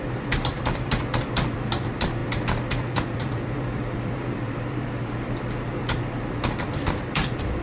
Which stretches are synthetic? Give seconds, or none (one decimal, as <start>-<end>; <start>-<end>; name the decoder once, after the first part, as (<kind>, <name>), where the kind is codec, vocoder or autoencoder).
0.0-7.6 (vocoder, BigVGAN v2)